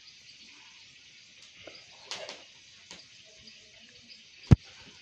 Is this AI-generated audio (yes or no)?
no